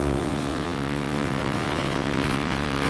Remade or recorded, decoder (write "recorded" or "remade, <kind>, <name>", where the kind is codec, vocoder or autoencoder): remade, vocoder, WaveNeXt